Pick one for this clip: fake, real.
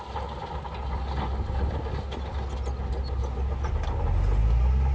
real